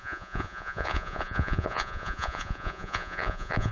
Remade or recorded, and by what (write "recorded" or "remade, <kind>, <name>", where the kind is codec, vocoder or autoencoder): remade, vocoder, Vocos